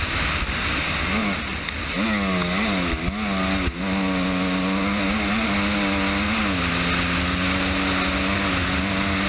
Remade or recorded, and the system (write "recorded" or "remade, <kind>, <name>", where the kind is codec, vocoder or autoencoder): recorded